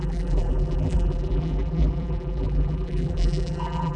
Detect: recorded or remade remade